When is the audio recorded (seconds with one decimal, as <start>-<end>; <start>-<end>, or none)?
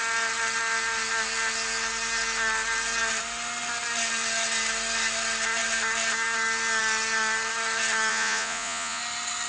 0.0-8.1; 9.0-9.5